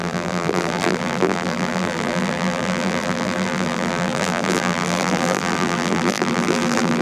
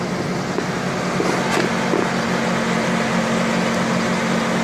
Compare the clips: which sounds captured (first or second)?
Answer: second